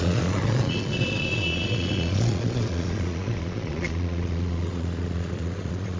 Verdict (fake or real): fake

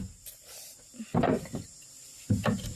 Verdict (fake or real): real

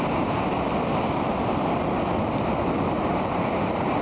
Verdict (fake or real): real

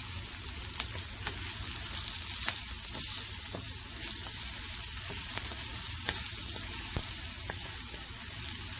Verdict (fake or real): real